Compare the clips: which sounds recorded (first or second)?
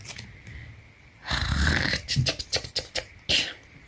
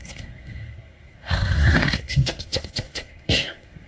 first